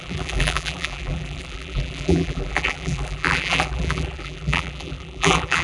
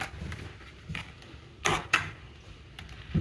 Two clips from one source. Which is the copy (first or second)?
first